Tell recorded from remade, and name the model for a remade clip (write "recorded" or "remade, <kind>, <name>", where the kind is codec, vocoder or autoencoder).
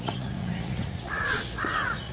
remade, vocoder, Vocos